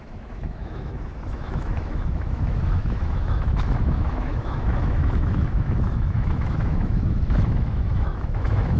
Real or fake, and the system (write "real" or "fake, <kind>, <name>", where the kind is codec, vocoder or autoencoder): fake, autoencoder, DAC-VAE